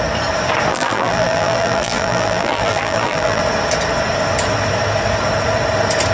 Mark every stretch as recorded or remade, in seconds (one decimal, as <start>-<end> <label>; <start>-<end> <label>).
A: 0.0-0.7 recorded; 0.7-3.4 remade; 3.4-6.1 recorded